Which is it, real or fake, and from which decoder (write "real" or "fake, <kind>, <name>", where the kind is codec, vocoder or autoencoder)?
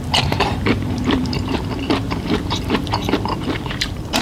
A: fake, vocoder, BigVGAN v2